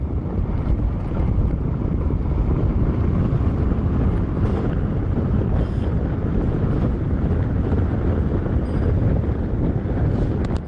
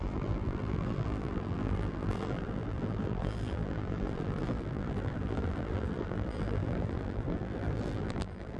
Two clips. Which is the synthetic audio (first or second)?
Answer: second